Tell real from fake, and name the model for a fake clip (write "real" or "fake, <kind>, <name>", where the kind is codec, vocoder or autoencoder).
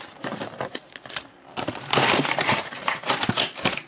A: fake, vocoder, BigVGAN v2